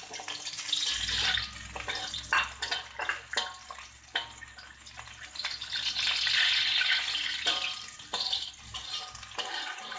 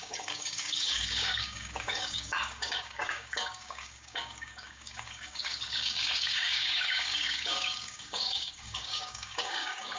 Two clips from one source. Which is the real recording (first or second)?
first